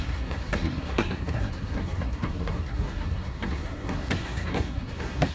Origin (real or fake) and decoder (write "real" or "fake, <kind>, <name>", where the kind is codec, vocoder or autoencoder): fake, codec, SNAC